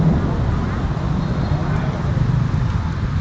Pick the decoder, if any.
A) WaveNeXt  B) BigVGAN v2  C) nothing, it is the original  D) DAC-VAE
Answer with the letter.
C